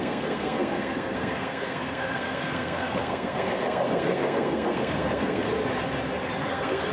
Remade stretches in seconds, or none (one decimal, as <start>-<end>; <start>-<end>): 0.0-5.5; 6.5-6.9